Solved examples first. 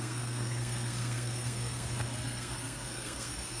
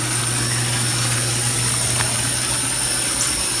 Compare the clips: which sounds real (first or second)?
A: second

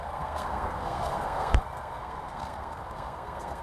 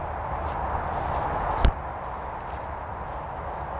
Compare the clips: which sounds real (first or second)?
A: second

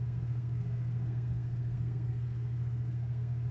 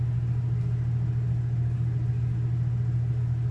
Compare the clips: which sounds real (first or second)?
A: second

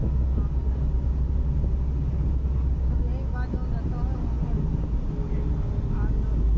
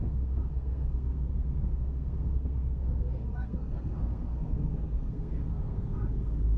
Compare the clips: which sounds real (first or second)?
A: first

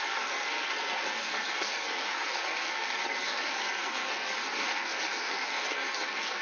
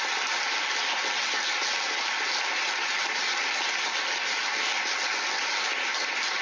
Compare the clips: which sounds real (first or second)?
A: second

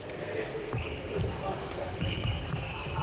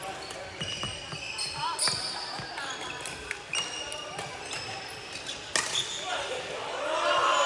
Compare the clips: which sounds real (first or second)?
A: second